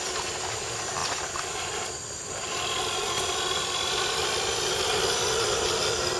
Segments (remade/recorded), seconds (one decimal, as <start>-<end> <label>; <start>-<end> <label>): 0.0-6.2 recorded